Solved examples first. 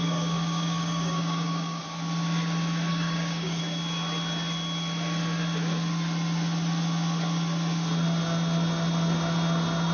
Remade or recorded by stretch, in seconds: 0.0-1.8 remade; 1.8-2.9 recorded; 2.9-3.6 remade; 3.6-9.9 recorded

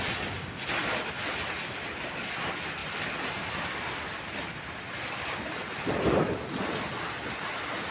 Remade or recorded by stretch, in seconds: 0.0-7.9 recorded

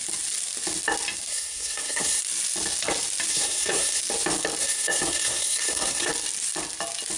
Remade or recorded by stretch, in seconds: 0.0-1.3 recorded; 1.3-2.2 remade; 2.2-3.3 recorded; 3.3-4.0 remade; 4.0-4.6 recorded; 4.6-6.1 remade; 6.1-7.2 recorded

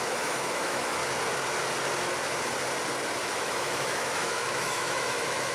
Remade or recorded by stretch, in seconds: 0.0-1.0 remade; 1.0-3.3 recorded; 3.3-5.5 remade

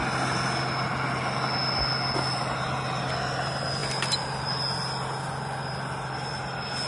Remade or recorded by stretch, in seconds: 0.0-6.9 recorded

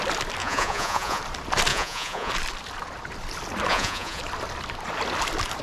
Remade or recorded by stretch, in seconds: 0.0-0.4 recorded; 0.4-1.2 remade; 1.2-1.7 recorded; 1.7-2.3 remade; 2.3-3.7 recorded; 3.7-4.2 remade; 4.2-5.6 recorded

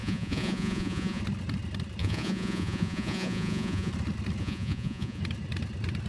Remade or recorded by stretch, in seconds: 0.0-1.2 remade; 1.2-2.0 recorded; 2.0-3.9 remade; 3.9-4.4 recorded; 4.4-5.2 remade; 5.2-6.1 recorded